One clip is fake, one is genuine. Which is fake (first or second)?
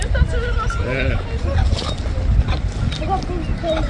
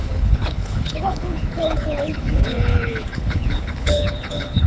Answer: second